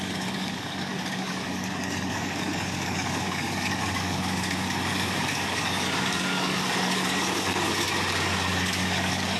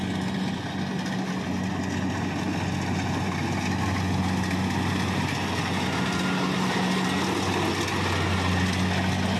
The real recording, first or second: second